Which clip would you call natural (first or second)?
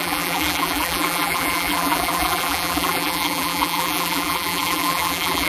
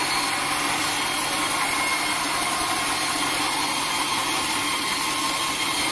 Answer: second